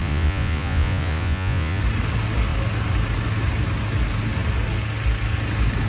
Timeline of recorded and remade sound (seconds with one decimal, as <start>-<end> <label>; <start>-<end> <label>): 0.0-1.8 remade; 1.8-5.9 recorded

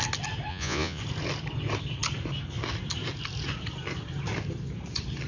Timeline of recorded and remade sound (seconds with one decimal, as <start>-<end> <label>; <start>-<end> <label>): 0.0-0.5 recorded; 0.5-1.0 remade; 1.0-5.3 recorded